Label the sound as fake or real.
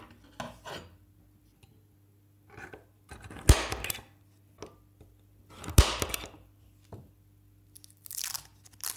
real